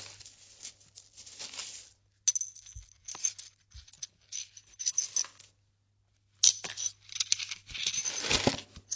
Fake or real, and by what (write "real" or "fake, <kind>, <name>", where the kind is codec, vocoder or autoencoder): real